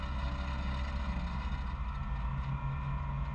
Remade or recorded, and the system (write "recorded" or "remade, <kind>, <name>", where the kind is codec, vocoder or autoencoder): recorded